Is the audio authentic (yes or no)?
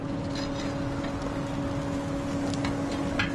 yes